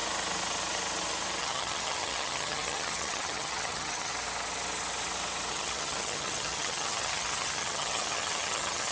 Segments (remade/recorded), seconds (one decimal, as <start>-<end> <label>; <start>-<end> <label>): 0.0-1.4 recorded; 1.4-4.1 remade; 4.1-5.5 recorded; 5.5-8.9 remade